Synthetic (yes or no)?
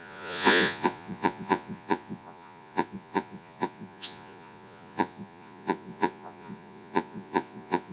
yes